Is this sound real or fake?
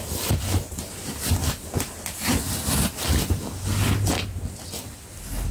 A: real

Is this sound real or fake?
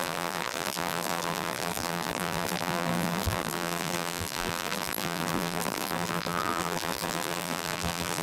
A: fake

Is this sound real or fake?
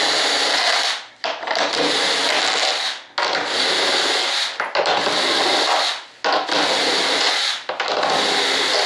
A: real